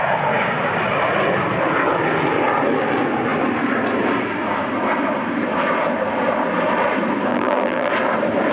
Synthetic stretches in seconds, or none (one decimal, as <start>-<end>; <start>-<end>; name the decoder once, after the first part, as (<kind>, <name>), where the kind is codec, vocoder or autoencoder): 7.3-7.9 (vocoder, BigVGAN v2)